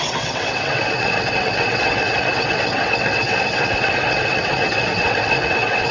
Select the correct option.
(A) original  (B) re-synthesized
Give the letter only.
B